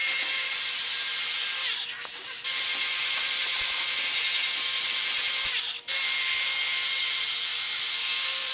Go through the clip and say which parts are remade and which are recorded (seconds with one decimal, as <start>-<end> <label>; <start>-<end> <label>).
0.0-0.6 remade; 0.6-2.8 recorded; 2.8-3.3 remade; 3.3-7.5 recorded; 7.5-8.5 remade